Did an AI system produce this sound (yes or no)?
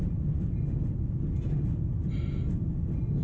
no